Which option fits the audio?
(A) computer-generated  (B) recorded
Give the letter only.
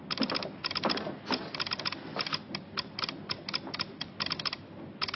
B